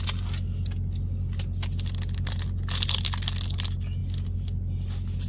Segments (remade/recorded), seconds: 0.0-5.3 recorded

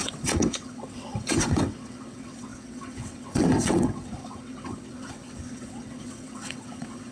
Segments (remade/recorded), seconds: 0.0-7.1 remade